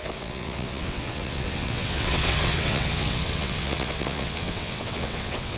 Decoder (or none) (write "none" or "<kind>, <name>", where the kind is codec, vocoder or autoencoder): vocoder, WaveNeXt